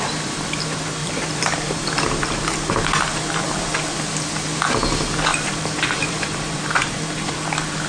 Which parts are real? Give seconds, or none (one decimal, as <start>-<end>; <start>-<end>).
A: 0.0-1.0; 2.7-3.1; 3.7-5.3; 7.3-7.9